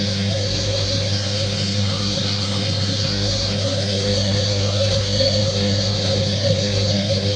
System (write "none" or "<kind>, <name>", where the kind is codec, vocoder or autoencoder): codec, SNAC